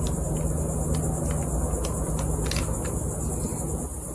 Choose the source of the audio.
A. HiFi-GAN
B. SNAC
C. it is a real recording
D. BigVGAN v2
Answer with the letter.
C